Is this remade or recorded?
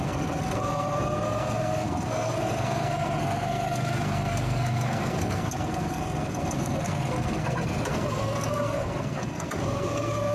remade